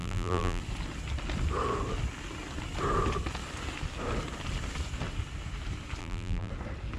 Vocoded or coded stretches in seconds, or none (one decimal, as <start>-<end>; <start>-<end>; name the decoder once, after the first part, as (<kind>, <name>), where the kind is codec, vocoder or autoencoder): 0.0-0.6 (vocoder, BigVGAN v2); 6.0-6.5